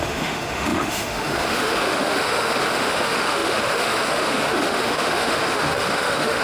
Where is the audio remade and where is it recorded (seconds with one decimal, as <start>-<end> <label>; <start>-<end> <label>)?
0.0-6.4 remade